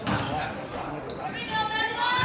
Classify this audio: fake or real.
real